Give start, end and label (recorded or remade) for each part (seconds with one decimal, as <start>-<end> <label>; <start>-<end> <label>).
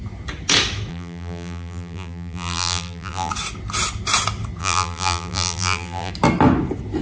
0.0-0.9 recorded; 0.9-3.3 remade; 3.3-4.6 recorded; 4.6-6.1 remade; 6.1-7.0 recorded